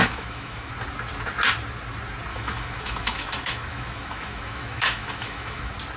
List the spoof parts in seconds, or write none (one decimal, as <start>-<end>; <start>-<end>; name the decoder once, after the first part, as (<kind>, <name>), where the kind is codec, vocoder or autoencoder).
0.0-0.7 (autoencoder, DAC-VAE); 2.3-5.6